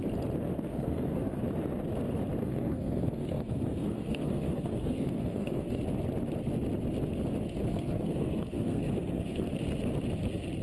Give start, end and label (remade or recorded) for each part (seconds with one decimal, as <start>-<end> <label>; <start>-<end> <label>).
0.0-0.7 recorded; 0.7-1.4 remade; 1.4-2.4 recorded; 2.4-5.8 remade; 5.8-7.7 recorded; 7.7-9.5 remade; 9.5-10.6 recorded